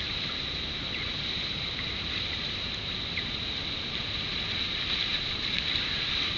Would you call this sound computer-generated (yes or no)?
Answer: yes